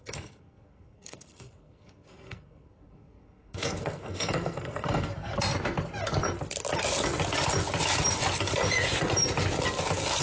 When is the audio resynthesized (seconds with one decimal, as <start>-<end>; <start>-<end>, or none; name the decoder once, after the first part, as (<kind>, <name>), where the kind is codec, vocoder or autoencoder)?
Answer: 0.0-5.3 (codec, SNAC)